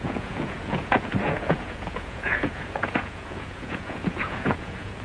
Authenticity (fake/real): fake